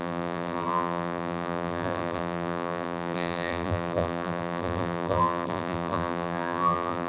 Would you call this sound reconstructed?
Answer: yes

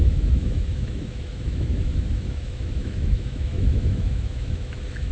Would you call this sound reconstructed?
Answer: yes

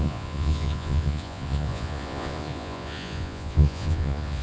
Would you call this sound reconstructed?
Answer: yes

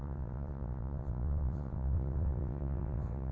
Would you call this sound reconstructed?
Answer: yes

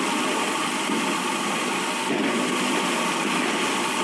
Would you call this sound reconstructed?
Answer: no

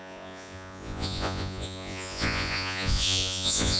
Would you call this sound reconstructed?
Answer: yes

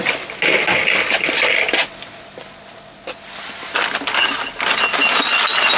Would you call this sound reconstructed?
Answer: no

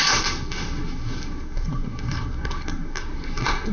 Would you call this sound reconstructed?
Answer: yes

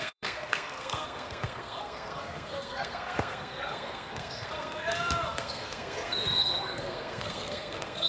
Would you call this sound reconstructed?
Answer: yes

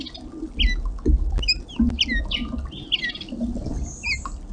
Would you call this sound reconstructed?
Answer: no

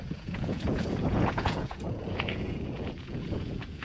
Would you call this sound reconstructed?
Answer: yes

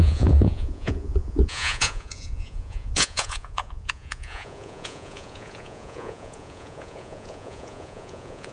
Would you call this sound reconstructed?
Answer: yes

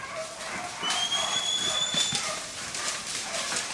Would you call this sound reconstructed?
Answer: no